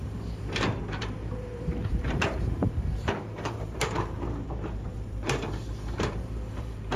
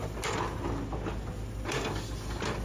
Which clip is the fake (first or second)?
first